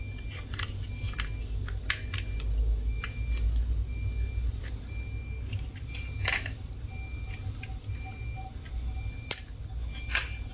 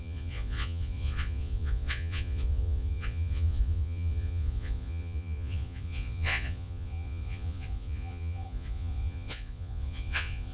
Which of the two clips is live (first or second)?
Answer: first